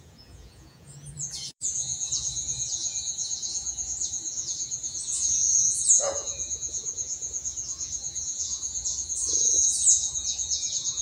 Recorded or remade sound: remade